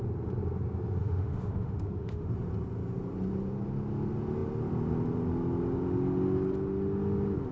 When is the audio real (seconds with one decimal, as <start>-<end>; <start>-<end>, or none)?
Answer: 0.0-1.0; 2.3-7.5